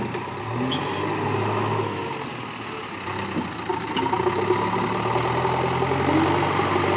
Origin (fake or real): real